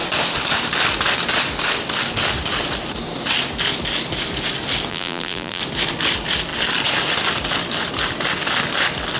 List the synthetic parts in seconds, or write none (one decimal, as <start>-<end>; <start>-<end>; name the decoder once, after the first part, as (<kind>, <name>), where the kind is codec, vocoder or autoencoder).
4.9-5.6 (vocoder, BigVGAN v2)